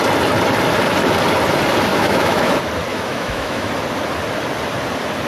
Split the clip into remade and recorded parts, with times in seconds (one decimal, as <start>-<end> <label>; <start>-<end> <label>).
0.0-1.9 recorded; 1.9-2.5 remade; 2.5-2.9 recorded; 2.9-3.7 remade; 3.7-5.3 recorded